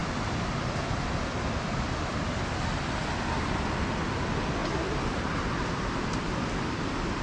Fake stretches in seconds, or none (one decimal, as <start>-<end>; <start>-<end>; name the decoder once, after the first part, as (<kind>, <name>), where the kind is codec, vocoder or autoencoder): 3.4-7.2 (vocoder, BigVGAN v2)